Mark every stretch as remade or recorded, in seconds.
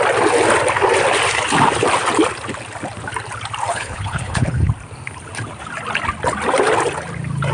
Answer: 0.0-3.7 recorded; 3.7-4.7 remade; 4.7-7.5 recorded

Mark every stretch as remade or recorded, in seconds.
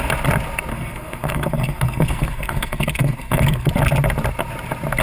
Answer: 0.0-0.7 recorded; 0.7-3.7 remade; 3.7-5.0 recorded